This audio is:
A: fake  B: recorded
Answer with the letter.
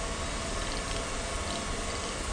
B